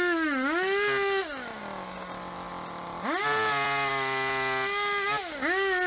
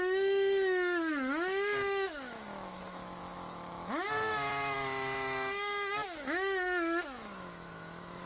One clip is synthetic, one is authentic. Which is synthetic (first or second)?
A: second